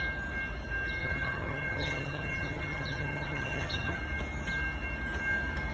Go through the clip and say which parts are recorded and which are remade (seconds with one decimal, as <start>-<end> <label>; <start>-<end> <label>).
0.0-1.0 recorded; 1.0-4.0 remade; 4.0-5.7 recorded

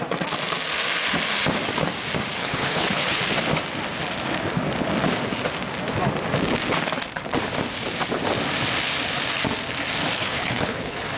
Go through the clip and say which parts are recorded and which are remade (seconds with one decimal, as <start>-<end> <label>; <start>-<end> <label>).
0.0-2.4 recorded; 2.4-3.2 remade; 3.2-10.2 recorded; 10.2-11.2 remade